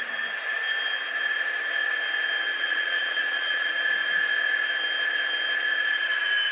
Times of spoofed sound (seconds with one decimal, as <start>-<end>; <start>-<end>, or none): 2.5-3.7